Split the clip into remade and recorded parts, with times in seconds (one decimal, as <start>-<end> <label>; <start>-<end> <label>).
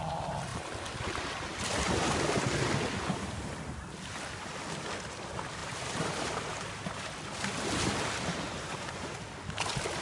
0.0-5.6 recorded; 5.6-7.0 remade; 7.0-10.0 recorded